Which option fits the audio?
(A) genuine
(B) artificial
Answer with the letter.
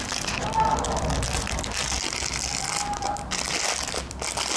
A